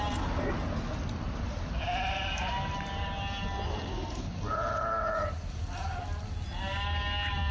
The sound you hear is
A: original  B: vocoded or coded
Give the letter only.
A